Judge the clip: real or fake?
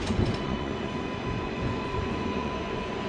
fake